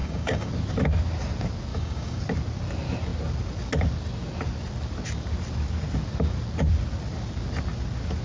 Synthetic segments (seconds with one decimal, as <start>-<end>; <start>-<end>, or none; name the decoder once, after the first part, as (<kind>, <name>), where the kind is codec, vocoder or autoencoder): 0.0-0.5 (codec, DAC); 1.7-2.2